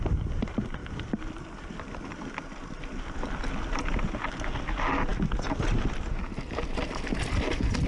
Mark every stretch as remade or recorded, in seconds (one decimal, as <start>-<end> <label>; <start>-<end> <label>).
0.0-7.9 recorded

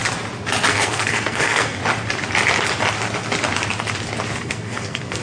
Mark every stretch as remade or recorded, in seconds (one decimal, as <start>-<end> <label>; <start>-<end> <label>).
0.0-0.7 recorded; 0.7-1.8 remade; 1.8-4.4 recorded; 4.4-5.2 remade

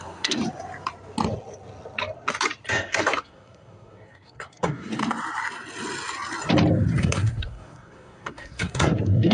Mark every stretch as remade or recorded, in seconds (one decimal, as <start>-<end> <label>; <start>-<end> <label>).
0.0-0.4 remade; 0.4-2.7 recorded; 2.7-5.0 remade; 5.0-7.0 recorded; 7.0-9.3 remade

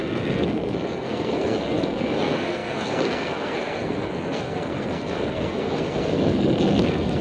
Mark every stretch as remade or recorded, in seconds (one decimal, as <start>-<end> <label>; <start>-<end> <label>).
0.0-7.2 remade

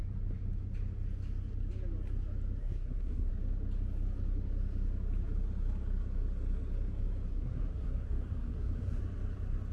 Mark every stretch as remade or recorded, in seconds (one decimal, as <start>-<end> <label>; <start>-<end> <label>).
0.0-2.6 recorded; 2.6-3.3 remade; 3.3-7.3 recorded; 7.3-9.0 remade; 9.0-9.7 recorded

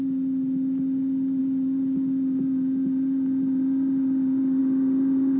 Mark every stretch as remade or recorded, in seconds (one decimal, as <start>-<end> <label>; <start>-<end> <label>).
0.0-5.4 recorded

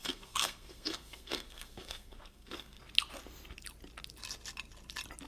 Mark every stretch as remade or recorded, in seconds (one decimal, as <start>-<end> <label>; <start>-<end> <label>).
0.0-2.8 remade; 2.8-5.3 recorded

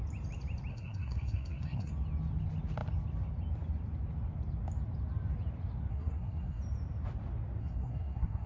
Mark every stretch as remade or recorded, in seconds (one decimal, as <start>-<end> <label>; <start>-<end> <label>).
0.0-0.7 recorded; 0.7-1.9 remade; 1.9-5.9 recorded; 5.9-6.6 remade; 6.6-7.6 recorded; 7.6-8.5 remade